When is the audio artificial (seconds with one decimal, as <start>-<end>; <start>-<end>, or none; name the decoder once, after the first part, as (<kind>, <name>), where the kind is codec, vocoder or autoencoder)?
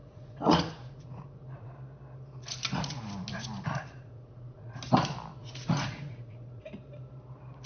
0.0-1.7 (vocoder, Vocos); 3.7-4.8; 5.4-6.6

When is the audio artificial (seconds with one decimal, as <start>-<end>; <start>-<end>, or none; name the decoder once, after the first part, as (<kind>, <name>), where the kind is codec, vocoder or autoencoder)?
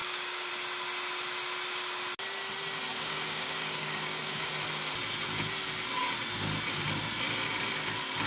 0.0-0.5 (codec, DAC); 2.9-4.5